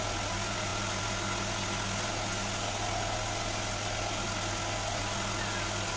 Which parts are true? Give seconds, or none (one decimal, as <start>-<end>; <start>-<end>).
0.0-6.0